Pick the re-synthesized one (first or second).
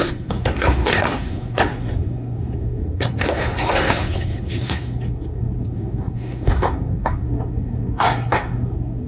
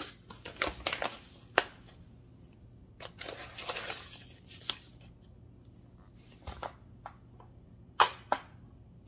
first